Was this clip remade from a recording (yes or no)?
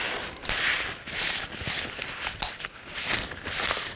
no